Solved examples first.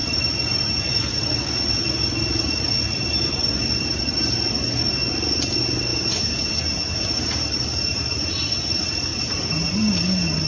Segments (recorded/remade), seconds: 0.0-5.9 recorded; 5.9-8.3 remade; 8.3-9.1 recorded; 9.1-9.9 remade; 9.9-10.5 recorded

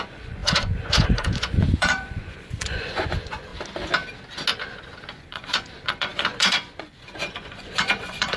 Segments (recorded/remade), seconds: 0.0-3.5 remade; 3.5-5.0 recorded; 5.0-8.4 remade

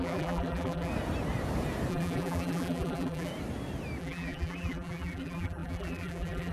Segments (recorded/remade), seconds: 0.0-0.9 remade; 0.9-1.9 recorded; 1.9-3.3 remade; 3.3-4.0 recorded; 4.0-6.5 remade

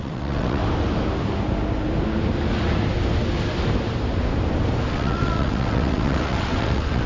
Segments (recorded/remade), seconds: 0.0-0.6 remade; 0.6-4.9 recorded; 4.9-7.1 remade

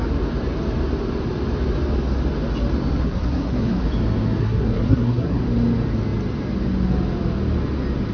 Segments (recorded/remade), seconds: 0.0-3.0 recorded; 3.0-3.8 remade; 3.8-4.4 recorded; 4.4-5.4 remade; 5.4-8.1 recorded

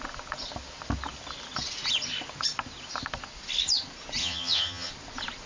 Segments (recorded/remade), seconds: 0.0-4.2 recorded; 4.2-4.9 remade; 4.9-5.5 recorded

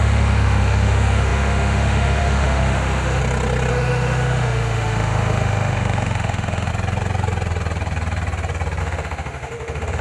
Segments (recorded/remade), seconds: 0.0-3.2 remade; 3.2-3.7 recorded; 3.7-6.7 remade; 6.7-8.8 recorded; 8.8-10.0 remade